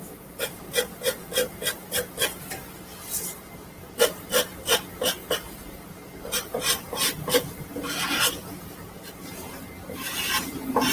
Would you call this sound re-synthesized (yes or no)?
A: yes